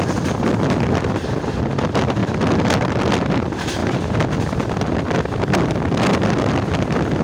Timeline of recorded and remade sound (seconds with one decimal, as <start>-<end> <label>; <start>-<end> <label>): 0.0-7.2 remade